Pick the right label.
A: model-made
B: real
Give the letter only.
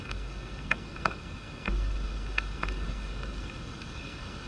A